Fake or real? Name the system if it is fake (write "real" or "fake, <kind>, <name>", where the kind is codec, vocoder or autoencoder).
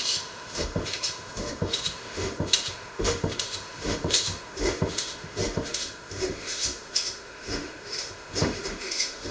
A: fake, autoencoder, DAC-VAE